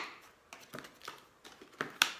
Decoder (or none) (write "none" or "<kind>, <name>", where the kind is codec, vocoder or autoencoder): none